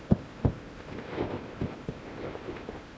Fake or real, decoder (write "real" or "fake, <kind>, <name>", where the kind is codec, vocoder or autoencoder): fake, codec, ZipCodec